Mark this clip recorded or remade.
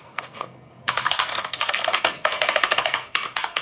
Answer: remade